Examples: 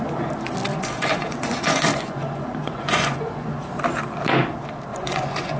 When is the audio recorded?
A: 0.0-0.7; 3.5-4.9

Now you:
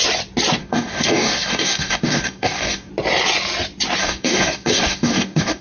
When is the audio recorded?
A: 0.0-0.6; 2.9-4.0

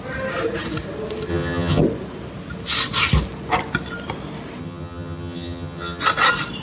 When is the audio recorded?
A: 0.0-1.3; 1.8-4.6; 6.0-6.6

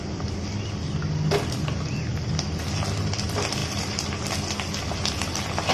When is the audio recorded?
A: 0.0-3.6; 4.3-5.7

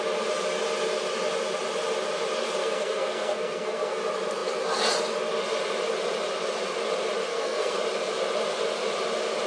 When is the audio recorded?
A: 0.0-2.6; 4.0-7.3; 7.8-9.5

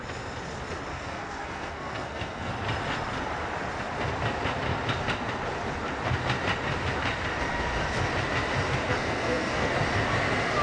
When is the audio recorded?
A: 0.0-0.9; 2.5-8.9; 9.7-10.6

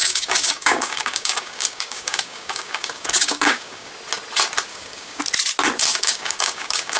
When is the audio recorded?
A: 3.9-4.7; 5.2-5.9